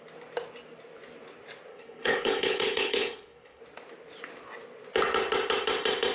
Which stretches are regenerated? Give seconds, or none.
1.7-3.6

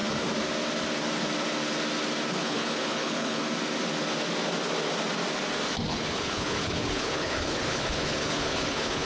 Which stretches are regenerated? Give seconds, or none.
2.3-3.4; 5.9-9.1

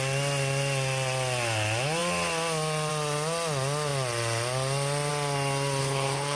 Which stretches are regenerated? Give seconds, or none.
5.8-6.4

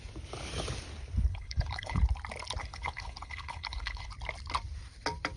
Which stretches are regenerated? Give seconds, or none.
1.3-2.0; 2.6-4.1

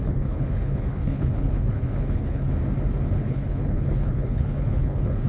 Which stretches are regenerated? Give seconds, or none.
0.0-2.5; 3.1-5.3

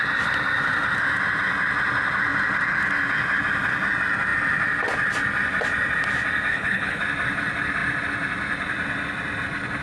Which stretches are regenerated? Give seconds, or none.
6.5-7.0